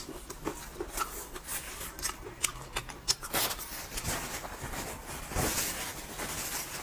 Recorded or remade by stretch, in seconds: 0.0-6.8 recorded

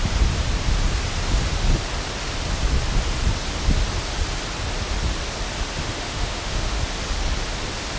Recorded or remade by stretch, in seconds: 0.0-5.8 recorded; 5.8-6.8 remade; 6.8-8.0 recorded

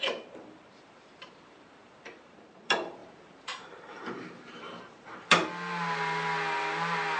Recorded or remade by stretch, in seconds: 0.0-5.4 remade; 5.4-7.2 recorded

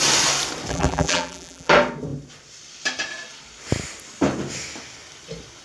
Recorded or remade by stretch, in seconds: 0.0-0.7 recorded; 0.7-1.7 remade; 1.7-5.6 recorded